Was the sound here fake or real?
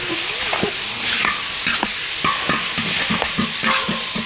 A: real